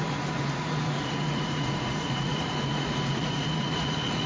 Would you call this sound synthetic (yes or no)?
yes